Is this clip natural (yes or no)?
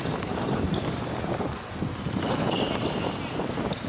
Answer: yes